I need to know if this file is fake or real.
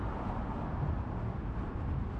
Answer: real